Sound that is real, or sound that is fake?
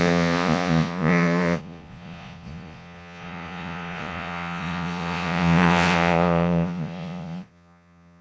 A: fake